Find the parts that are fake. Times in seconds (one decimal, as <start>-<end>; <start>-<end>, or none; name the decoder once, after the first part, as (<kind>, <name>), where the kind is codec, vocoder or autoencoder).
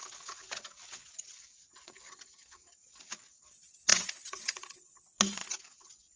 0.0-6.2 (vocoder, WaveNeXt)